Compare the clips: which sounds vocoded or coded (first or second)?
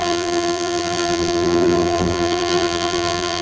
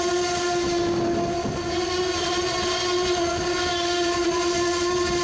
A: first